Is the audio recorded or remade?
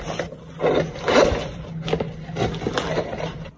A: recorded